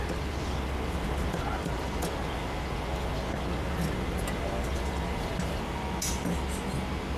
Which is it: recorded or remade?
recorded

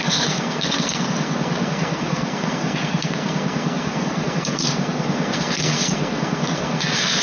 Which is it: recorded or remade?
remade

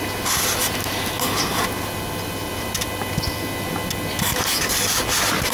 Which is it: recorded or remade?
recorded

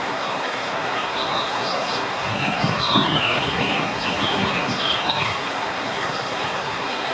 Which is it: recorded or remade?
remade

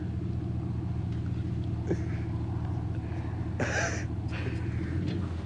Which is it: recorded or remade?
recorded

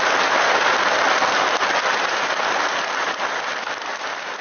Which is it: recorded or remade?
recorded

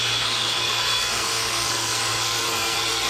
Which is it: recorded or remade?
remade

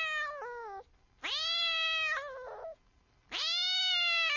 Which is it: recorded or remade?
recorded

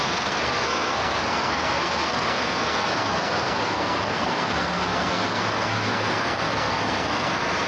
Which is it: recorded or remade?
remade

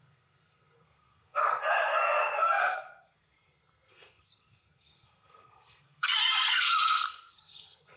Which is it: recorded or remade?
remade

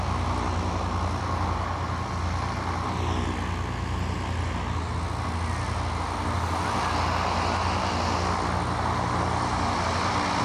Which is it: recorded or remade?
recorded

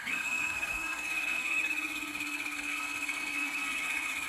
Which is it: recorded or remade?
remade